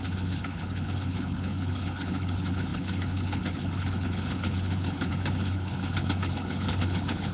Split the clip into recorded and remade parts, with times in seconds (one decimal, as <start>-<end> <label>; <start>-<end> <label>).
0.0-7.3 remade